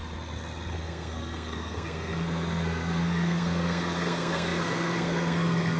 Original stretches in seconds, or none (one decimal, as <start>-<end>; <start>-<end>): 0.0-0.7